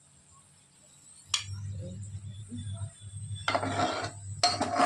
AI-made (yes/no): no